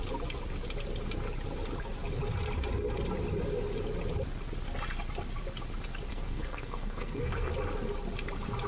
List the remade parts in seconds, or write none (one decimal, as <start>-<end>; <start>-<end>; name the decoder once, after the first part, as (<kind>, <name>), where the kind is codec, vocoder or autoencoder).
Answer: 6.1-7.5 (codec, SNAC)